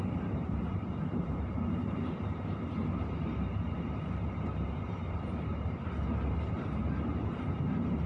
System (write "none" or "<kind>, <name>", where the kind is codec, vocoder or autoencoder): vocoder, BigVGAN v2